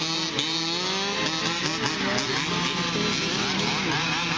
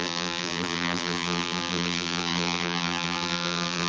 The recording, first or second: first